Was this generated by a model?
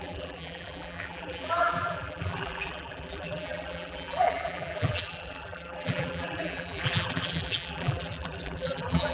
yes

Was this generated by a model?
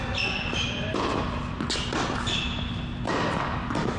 no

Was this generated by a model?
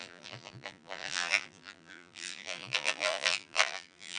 yes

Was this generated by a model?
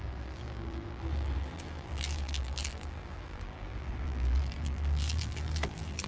yes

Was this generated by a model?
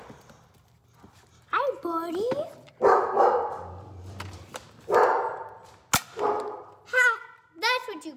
no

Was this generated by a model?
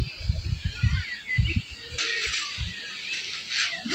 no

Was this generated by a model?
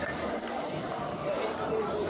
no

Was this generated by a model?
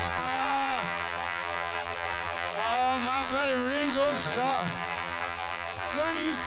yes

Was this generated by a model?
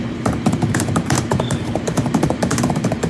yes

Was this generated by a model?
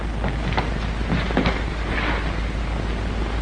no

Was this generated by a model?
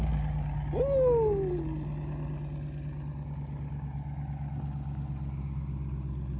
no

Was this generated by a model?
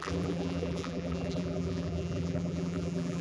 yes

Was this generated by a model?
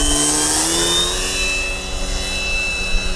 no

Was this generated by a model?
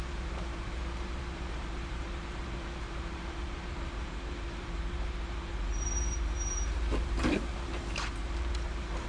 yes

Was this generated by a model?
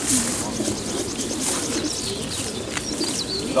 no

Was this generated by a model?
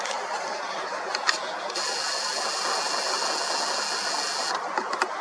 no